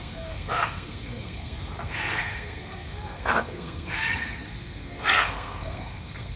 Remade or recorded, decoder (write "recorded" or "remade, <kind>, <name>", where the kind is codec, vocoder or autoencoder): remade, codec, SNAC